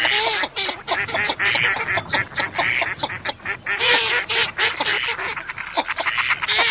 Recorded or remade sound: recorded